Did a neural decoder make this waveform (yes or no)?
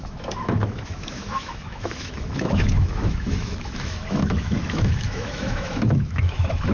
yes